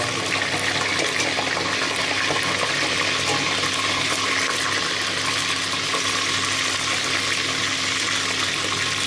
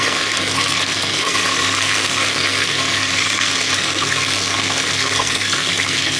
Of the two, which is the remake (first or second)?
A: second